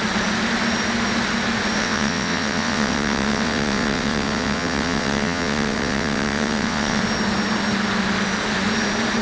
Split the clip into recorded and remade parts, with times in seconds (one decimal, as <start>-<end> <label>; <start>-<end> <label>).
0.0-1.8 recorded; 1.8-7.0 remade; 7.0-9.2 recorded